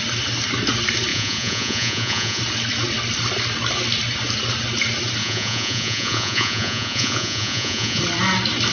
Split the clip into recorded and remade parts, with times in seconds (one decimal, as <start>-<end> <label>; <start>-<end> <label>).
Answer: 0.0-1.1 recorded; 1.1-2.4 remade; 2.4-5.2 recorded; 5.2-8.0 remade; 8.0-8.7 recorded